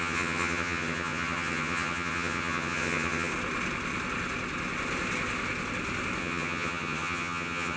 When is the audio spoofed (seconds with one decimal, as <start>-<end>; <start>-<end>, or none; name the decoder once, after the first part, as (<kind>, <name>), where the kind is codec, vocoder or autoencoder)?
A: 0.0-3.3 (vocoder, HiFi-GAN); 6.2-7.8